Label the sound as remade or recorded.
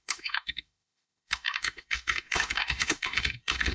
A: remade